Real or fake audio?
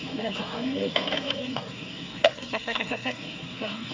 fake